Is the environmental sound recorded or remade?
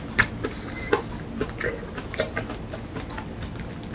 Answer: recorded